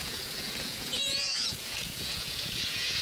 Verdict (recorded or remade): remade